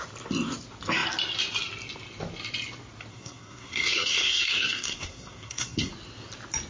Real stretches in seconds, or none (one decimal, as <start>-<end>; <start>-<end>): 0.0-3.1; 5.9-6.7